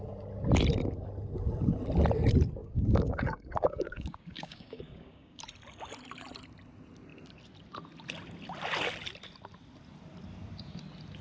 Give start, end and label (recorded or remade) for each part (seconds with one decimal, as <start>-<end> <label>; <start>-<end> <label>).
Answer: 0.0-2.6 recorded; 2.6-5.4 remade; 5.4-11.2 recorded

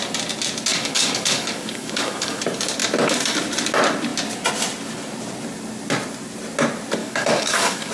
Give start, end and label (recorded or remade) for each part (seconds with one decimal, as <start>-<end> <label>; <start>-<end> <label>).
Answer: 0.0-0.7 recorded; 0.7-2.4 remade; 2.4-7.0 recorded; 7.0-7.9 remade

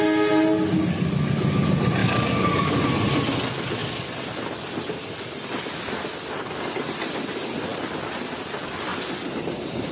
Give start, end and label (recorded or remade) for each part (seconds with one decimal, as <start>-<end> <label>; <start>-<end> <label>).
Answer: 0.0-2.0 recorded; 2.0-2.8 remade; 2.8-9.9 recorded

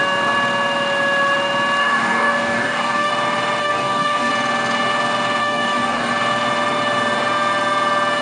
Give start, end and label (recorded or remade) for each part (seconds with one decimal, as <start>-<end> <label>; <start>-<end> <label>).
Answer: 0.0-1.8 recorded; 1.8-3.1 remade; 3.1-3.6 recorded; 3.6-4.3 remade; 4.3-5.4 recorded; 5.4-6.1 remade; 6.1-8.2 recorded

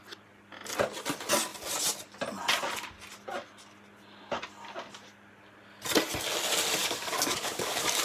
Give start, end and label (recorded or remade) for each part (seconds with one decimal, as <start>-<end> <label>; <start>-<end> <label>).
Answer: 0.0-6.8 recorded; 6.8-8.0 remade

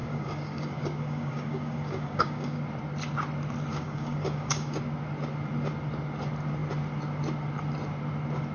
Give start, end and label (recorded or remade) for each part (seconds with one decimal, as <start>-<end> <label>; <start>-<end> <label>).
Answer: 0.0-2.6 remade; 2.6-3.7 recorded; 3.7-4.8 remade; 4.8-8.5 recorded

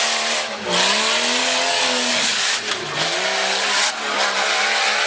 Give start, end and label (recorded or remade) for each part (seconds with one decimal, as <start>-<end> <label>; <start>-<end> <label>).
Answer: 0.0-1.4 recorded; 1.4-2.6 remade; 2.6-5.1 recorded